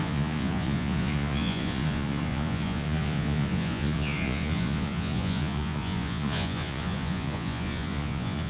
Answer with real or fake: fake